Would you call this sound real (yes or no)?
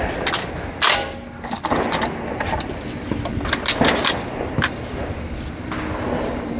yes